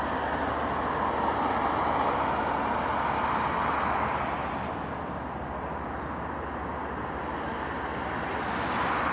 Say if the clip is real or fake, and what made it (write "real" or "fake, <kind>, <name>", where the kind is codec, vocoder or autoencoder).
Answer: real